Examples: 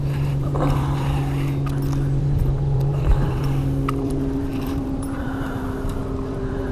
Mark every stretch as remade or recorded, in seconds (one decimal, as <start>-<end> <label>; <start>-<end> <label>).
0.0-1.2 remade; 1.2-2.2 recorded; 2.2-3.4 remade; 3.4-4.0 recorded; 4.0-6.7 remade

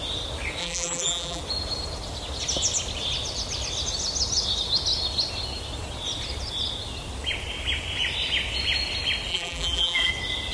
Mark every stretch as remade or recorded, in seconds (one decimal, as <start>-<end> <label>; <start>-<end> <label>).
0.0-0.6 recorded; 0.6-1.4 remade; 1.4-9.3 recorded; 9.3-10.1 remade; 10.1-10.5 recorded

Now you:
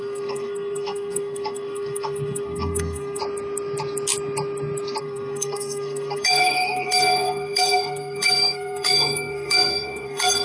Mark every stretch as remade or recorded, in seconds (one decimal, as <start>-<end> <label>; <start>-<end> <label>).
0.0-3.2 remade; 3.2-5.0 recorded; 5.0-10.4 remade